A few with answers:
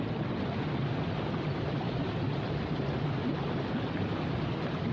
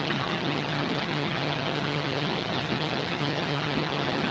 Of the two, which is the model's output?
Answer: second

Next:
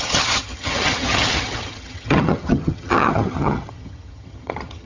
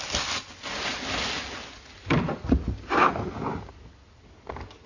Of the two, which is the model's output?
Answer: first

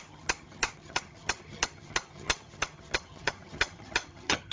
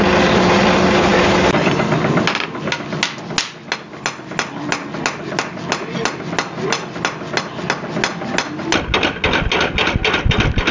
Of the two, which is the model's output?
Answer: first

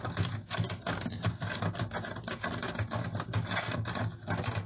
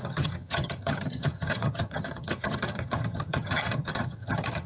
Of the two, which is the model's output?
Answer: second